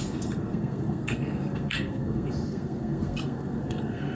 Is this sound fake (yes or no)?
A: yes